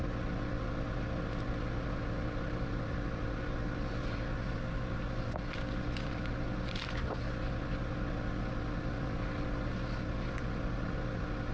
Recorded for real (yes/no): yes